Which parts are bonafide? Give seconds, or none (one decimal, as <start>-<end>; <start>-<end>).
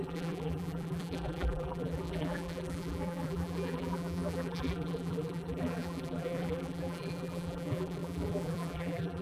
none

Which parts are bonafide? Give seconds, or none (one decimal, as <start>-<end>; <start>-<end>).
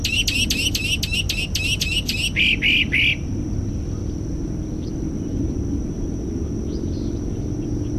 0.0-8.0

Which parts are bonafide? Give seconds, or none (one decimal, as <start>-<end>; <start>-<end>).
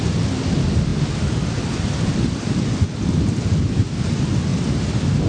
0.0-0.9; 4.1-5.3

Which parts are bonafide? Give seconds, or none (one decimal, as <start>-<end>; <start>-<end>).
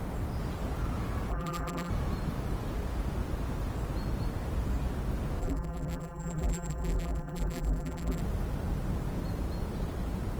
0.0-1.3; 1.9-5.4; 8.2-10.4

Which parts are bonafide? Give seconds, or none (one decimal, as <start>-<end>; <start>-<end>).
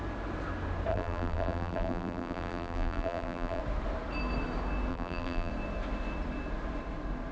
0.0-0.9; 3.6-4.9; 5.5-7.3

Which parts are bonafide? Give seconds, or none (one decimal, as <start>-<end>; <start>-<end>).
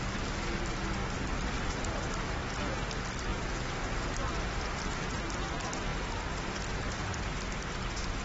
0.0-1.0; 2.2-3.3; 4.1-8.2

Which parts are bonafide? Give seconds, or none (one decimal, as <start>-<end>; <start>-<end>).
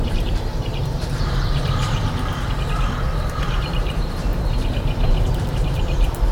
4.3-5.5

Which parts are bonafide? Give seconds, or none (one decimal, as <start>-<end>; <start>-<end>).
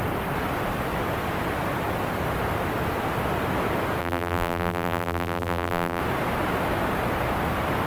0.0-4.0; 6.0-7.9